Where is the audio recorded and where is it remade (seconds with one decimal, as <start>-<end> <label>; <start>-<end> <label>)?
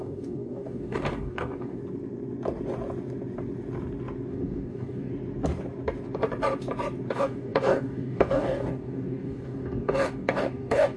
0.0-1.8 remade; 1.8-4.3 recorded; 4.3-5.1 remade; 5.1-7.1 recorded; 7.1-11.0 remade